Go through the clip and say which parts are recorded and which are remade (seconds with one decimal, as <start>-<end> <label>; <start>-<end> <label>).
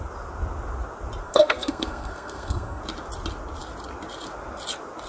0.0-1.2 recorded; 1.2-2.8 remade; 2.8-5.1 recorded